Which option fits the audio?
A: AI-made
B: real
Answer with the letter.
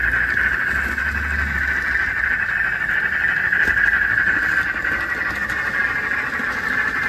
B